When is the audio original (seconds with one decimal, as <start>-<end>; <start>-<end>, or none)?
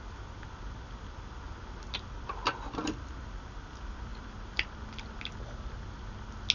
0.0-6.5